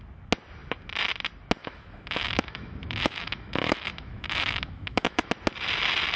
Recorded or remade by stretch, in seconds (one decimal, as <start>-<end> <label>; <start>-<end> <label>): 0.0-1.6 recorded; 1.6-5.3 remade; 5.3-6.2 recorded